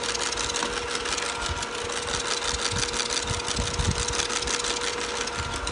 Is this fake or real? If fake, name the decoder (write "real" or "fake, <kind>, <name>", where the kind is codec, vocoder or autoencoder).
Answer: real